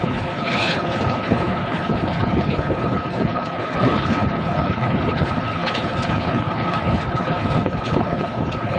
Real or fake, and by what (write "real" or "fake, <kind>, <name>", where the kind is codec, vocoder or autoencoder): fake, codec, HILCodec